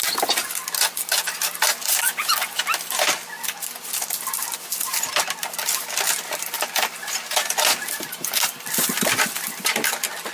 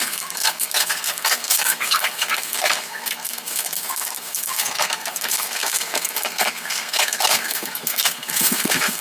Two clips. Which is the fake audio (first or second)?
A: second